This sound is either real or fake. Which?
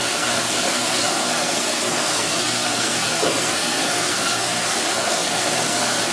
fake